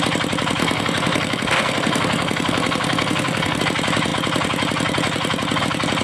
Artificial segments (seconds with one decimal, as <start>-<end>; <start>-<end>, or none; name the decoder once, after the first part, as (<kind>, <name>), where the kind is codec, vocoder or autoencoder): 0.6-3.6 (codec, SNAC)